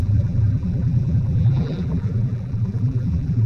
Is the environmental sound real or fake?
fake